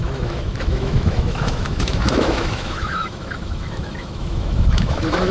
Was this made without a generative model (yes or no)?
no